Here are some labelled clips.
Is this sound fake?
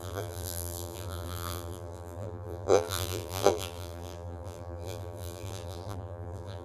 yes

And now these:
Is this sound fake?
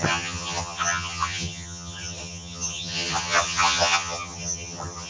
yes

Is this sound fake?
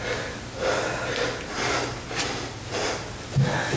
no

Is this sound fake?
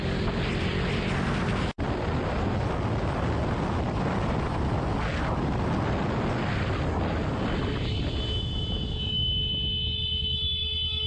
no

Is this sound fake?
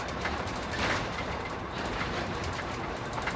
yes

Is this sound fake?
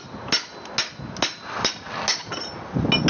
no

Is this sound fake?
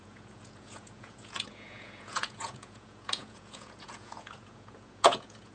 yes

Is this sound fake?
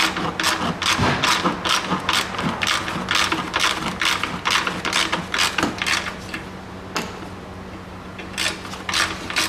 no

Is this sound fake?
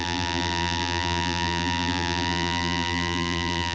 yes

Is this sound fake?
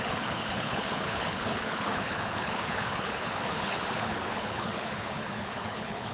yes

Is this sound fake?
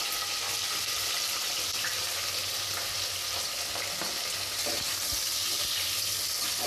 no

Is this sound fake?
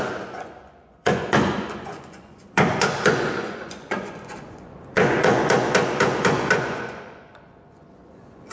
yes